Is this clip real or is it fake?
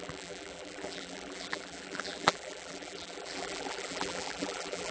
fake